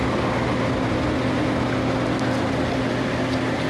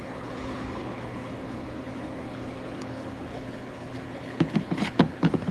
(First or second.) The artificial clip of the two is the second